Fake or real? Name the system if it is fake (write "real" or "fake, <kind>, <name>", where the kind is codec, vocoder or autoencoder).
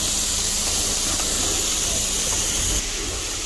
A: real